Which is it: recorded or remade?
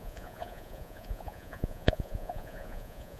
remade